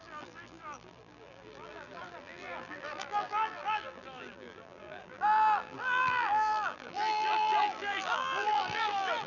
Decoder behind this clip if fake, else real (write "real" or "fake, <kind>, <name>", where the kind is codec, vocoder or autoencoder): fake, vocoder, BigVGAN v2